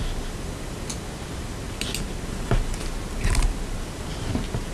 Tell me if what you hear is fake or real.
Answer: real